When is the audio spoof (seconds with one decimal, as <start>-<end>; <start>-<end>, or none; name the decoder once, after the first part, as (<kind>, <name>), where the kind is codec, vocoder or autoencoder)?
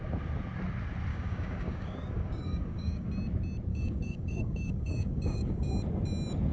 1.1-3.1 (codec, DAC); 3.7-5.7